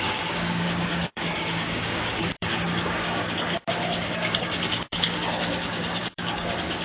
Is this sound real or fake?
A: fake